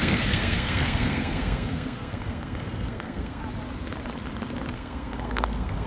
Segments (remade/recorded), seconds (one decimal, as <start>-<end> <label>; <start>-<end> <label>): 0.0-3.4 remade; 3.4-4.7 recorded; 4.7-5.9 remade